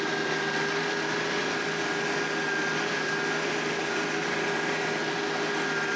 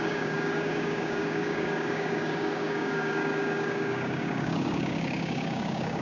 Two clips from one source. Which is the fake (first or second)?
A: second